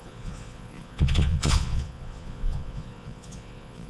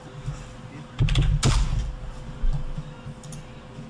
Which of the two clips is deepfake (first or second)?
first